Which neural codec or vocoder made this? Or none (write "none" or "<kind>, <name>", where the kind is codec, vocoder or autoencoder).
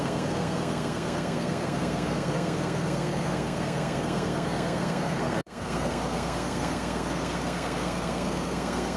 codec, SNAC